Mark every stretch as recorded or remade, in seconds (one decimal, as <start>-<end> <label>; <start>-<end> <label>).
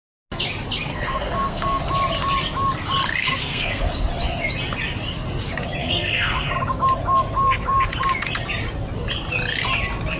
0.0-0.9 recorded; 0.9-1.8 remade; 1.8-3.2 recorded; 3.2-3.8 remade; 3.8-5.8 recorded; 5.8-6.5 remade; 6.5-10.2 recorded